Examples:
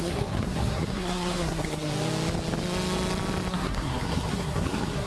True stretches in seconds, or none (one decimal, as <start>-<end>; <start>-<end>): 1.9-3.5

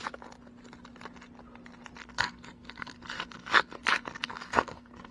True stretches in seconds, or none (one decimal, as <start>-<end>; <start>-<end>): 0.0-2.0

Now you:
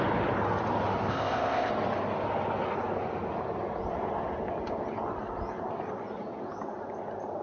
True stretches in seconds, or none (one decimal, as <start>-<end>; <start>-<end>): 0.0-1.1; 1.7-7.4

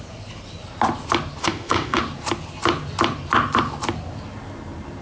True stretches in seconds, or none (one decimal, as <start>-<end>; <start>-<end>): 0.0-1.4; 2.0-5.0